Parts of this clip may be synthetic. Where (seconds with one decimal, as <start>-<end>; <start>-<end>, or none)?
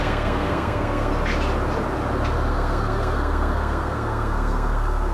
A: 0.0-1.1; 2.5-5.1